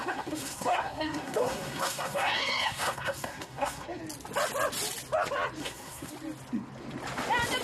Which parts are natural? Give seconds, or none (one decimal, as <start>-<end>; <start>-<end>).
4.0-5.6; 6.1-7.6